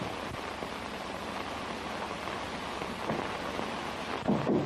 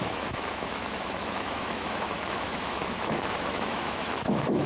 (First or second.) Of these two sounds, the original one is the first